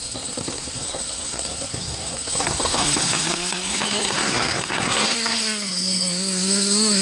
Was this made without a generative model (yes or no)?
no